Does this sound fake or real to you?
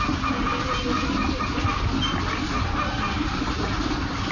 real